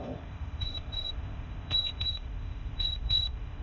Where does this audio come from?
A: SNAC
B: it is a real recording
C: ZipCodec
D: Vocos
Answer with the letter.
C